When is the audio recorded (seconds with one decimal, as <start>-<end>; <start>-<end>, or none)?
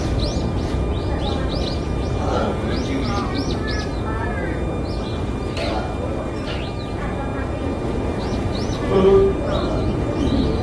0.0-10.6